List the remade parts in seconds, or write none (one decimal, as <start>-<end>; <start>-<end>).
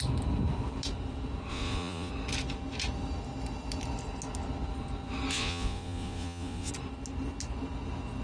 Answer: 1.5-2.1; 5.3-6.7